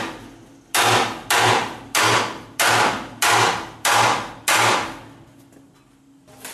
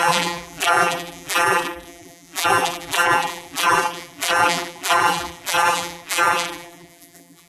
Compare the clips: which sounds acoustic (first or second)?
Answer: first